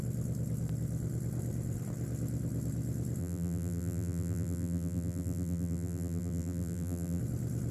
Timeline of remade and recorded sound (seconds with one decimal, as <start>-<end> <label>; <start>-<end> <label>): 0.0-3.2 recorded; 3.2-7.2 remade; 7.2-7.7 recorded